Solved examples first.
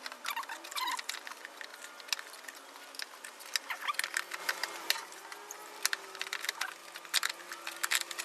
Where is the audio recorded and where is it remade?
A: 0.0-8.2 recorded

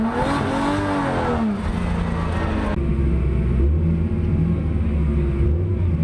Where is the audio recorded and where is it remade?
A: 0.0-6.0 recorded

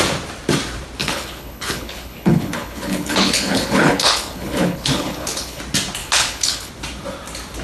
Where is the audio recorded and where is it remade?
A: 0.0-1.0 recorded; 1.0-5.6 remade; 5.6-6.0 recorded; 6.0-6.7 remade; 6.7-7.6 recorded

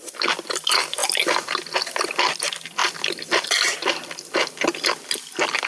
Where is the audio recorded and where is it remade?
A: 0.0-5.7 recorded

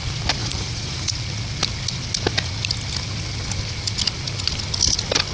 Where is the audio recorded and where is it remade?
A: 0.0-0.4 recorded; 0.4-1.1 remade; 1.1-5.3 recorded

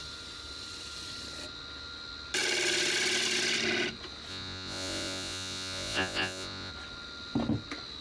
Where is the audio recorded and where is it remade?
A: 0.0-4.3 recorded; 4.3-6.7 remade; 6.7-8.0 recorded

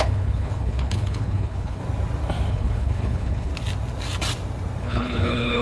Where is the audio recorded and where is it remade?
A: 0.0-1.8 remade; 1.8-2.5 recorded; 2.5-3.5 remade; 3.5-4.8 recorded; 4.8-5.6 remade

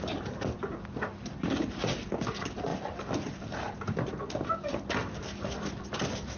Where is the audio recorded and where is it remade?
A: 0.0-6.4 recorded